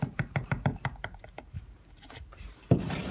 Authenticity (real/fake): fake